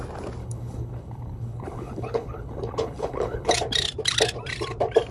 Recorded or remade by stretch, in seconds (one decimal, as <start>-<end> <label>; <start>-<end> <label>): 0.0-0.4 recorded; 0.4-3.5 remade; 3.5-5.1 recorded